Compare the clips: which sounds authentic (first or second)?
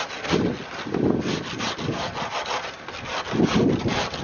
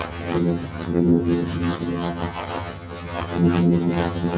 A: first